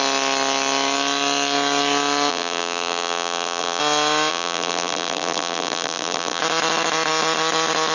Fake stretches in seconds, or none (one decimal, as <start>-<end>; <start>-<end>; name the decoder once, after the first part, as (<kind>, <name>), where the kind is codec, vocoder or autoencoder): 2.3-3.8 (vocoder, BigVGAN v2); 4.3-6.4